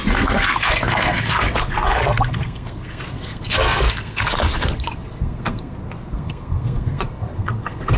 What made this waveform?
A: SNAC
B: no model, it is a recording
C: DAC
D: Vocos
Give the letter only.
A